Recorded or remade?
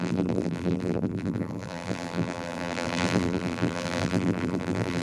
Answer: remade